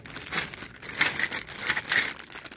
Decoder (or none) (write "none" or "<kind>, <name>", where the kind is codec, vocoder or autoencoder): none